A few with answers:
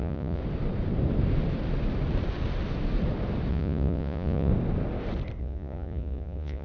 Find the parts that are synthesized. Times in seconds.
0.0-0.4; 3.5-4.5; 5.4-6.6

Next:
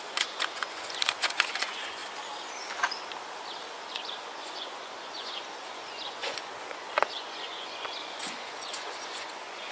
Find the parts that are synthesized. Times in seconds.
0.0-2.0; 3.7-9.7

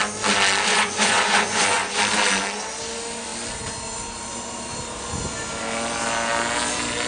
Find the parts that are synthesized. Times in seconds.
0.7-2.0

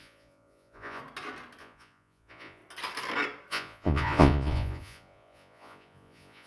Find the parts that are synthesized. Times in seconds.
0.0-1.0; 1.6-2.6; 3.5-6.5

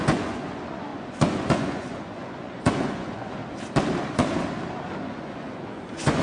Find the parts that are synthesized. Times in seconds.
0.0-3.4; 5.0-6.2

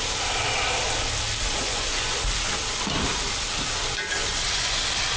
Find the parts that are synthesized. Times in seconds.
1.6-2.2; 4.2-4.8